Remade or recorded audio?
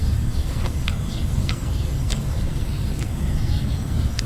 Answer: remade